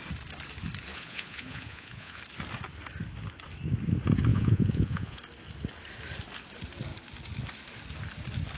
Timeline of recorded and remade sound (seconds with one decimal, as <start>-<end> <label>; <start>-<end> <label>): 0.0-0.9 recorded; 0.9-2.2 remade; 2.2-4.3 recorded; 4.3-5.2 remade; 5.2-8.6 recorded